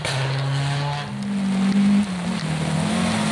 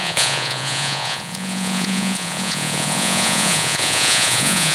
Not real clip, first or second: second